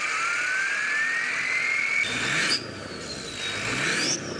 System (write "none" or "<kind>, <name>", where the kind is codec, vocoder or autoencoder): vocoder, BigVGAN v2